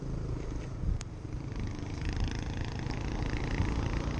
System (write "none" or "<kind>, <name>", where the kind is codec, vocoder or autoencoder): vocoder, BigVGAN v2